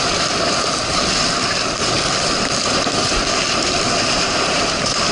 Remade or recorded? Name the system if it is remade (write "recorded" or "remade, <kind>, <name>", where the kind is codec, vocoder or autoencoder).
recorded